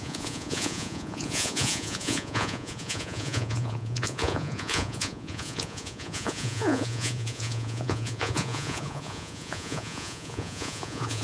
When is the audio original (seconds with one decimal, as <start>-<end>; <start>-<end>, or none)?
none